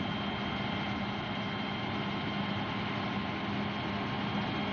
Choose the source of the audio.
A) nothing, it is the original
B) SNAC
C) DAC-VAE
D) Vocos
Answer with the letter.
A